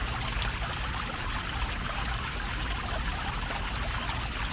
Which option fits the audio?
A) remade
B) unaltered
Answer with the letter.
B